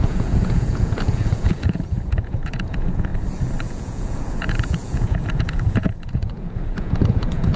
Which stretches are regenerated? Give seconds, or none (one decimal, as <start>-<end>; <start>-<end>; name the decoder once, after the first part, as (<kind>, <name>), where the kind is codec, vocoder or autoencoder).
0.0-3.1 (vocoder, Vocos); 3.6-7.6